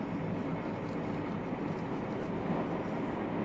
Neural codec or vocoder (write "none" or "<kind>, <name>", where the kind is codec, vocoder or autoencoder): none